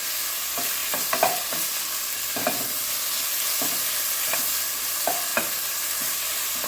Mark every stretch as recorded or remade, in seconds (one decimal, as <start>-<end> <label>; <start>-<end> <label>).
0.0-0.8 recorded; 0.8-1.5 remade; 1.5-6.7 recorded